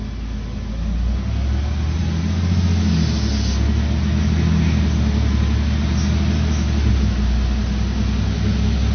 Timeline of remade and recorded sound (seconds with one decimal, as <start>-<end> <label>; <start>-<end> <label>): 0.0-8.9 recorded